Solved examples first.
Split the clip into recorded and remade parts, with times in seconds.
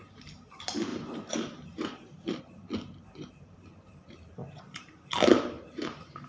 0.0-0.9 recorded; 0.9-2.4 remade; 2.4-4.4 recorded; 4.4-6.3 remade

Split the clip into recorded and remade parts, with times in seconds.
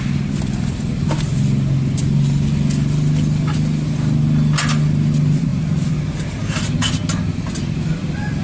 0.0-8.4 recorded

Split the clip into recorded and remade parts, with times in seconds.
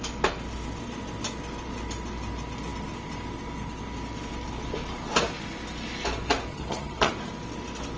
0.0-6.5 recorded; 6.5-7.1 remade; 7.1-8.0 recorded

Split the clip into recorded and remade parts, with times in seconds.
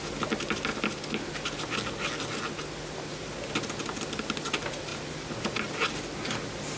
0.0-6.8 recorded